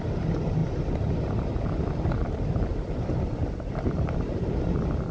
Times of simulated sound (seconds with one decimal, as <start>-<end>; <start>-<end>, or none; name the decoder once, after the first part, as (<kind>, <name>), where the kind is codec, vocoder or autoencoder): 0.6-1.4 (vocoder, BigVGAN v2); 2.2-2.7; 3.4-4.4